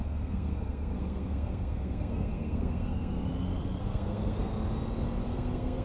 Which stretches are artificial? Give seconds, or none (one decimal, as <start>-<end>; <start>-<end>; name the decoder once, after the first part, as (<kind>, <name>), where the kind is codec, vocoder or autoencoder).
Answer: 0.0-3.2 (codec, SNAC); 3.8-4.5; 5.2-5.8